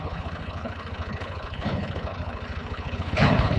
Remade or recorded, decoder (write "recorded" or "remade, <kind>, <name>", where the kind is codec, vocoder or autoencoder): remade, codec, HILCodec